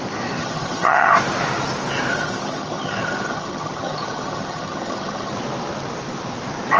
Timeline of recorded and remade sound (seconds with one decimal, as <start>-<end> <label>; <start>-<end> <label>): 0.0-0.4 recorded; 0.4-1.1 remade; 1.1-2.1 recorded; 2.1-5.3 remade; 5.3-6.8 recorded